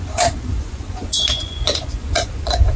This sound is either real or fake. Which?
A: fake